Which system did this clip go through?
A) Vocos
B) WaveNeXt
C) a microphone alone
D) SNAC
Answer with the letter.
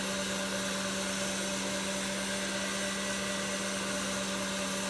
C